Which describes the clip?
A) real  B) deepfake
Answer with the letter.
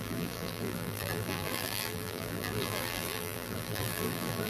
B